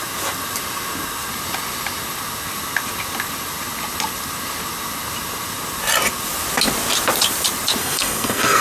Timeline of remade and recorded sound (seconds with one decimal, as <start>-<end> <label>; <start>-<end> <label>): 0.0-7.8 recorded; 7.8-8.6 remade